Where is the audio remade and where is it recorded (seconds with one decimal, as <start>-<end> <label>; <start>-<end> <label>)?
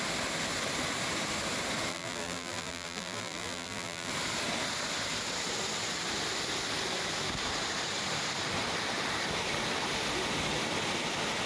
0.0-1.9 recorded; 1.9-4.1 remade; 4.1-11.5 recorded